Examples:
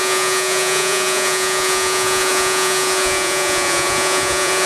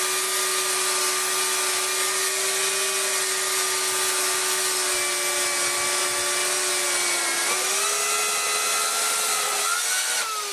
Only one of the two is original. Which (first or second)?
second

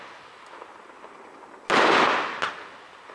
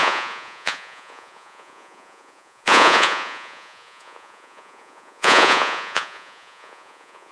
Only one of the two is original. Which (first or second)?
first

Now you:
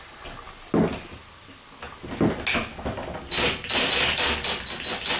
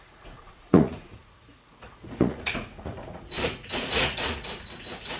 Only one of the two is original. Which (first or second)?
first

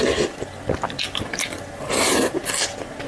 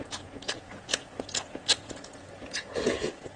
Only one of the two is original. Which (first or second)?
first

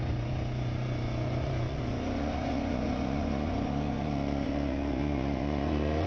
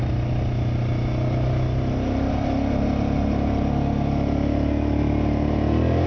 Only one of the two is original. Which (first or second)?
second